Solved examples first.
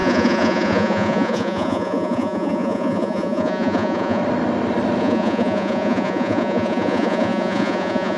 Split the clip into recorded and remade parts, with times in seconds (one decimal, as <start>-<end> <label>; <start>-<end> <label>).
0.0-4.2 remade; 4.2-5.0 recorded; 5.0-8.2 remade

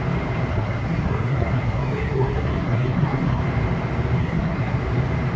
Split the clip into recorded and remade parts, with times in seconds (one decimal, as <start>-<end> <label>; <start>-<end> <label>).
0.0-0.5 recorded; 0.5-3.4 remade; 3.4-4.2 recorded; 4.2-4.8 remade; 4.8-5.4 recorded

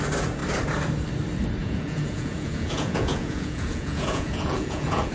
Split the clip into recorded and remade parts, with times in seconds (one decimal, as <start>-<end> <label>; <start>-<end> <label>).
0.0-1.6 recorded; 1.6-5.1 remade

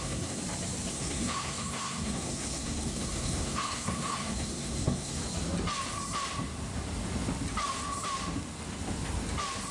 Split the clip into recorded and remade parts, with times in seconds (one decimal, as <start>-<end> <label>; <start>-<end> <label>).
0.0-0.4 remade; 0.4-0.9 recorded; 0.9-5.2 remade; 5.2-9.7 recorded

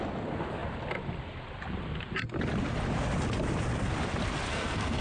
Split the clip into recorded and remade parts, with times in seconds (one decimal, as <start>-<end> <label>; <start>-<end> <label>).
0.0-4.5 recorded; 4.5-5.0 remade